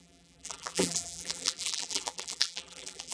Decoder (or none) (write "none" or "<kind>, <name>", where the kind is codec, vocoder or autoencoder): vocoder, BigVGAN v2